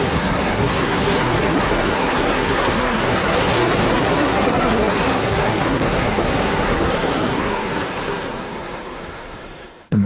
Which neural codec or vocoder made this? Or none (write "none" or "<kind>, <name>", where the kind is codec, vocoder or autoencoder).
codec, SNAC